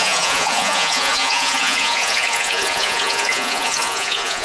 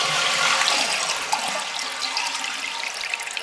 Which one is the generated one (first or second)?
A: first